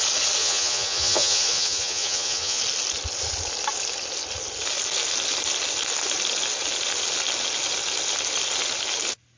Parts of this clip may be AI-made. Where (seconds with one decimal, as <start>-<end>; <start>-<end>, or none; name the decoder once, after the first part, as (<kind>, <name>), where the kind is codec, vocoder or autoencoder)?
0.4-2.6 (vocoder, Vocos)